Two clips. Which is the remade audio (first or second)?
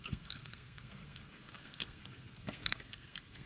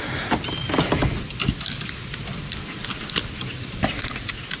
first